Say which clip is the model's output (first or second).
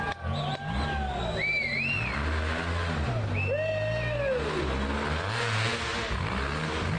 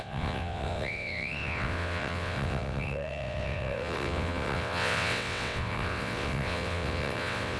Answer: second